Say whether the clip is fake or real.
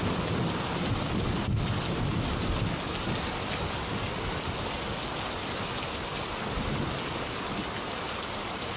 real